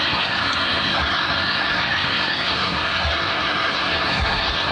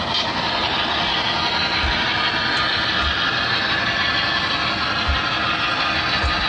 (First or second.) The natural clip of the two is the second